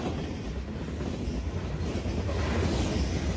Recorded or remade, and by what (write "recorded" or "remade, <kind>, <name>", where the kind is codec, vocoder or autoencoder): recorded